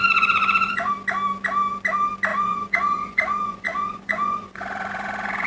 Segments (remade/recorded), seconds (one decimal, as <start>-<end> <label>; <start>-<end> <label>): 0.0-0.9 remade; 0.9-2.3 recorded; 2.3-5.5 remade